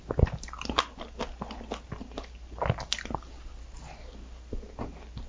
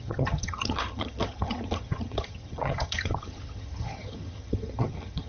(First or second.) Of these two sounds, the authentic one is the first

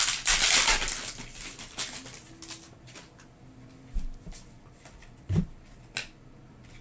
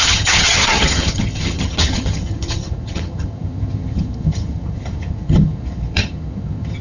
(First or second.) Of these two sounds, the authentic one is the first